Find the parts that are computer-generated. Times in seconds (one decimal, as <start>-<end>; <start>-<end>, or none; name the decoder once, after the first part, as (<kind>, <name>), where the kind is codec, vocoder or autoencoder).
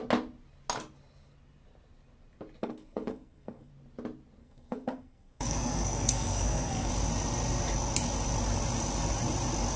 2.6-3.7 (codec, SNAC); 4.4-6.9